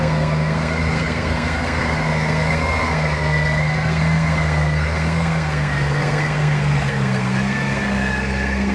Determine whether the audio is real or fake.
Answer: fake